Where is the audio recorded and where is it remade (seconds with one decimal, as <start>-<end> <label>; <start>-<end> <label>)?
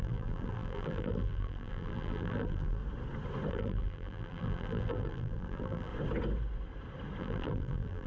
0.0-2.8 remade; 2.8-3.5 recorded; 3.5-5.9 remade; 5.9-7.2 recorded; 7.2-8.1 remade